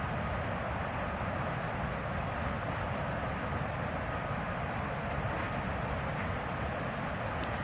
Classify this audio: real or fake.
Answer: real